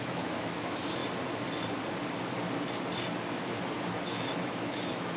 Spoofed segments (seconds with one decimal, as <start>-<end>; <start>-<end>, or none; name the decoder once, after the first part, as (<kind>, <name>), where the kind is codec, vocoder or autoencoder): 0.0-1.0 (autoencoder, DAC-VAE); 4.1-5.2